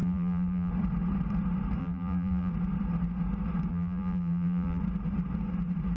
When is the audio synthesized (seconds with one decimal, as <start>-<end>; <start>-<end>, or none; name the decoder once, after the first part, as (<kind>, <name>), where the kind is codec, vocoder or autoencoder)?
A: 0.0-0.7 (vocoder, BigVGAN v2); 1.8-2.5; 3.7-4.8